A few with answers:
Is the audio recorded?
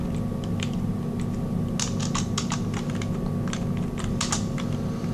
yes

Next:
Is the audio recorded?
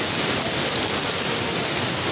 yes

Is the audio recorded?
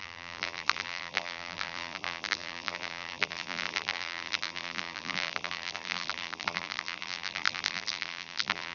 no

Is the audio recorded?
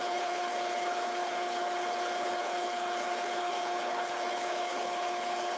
no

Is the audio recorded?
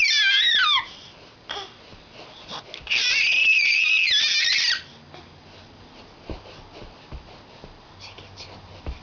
yes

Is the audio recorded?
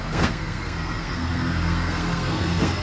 no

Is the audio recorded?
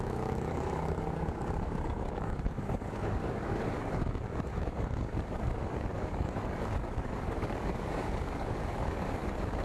no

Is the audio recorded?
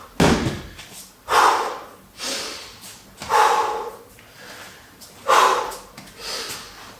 yes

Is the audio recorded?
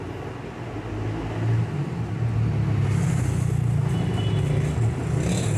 yes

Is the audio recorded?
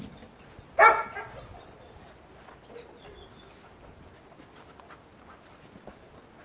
yes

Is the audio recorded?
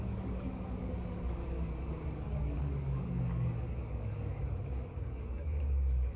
no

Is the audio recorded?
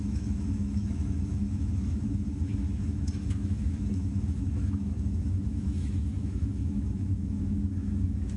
no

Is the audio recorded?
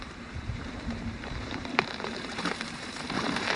no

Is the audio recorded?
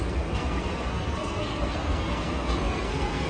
no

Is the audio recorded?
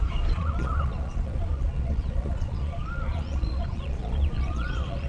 no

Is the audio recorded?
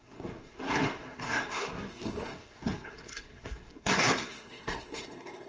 no